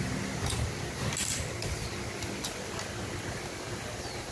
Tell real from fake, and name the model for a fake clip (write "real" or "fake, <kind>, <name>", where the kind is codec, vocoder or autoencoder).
real